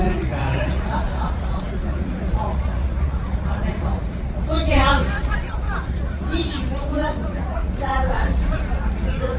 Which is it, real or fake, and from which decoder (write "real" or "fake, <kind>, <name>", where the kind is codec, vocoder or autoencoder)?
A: fake, vocoder, Vocos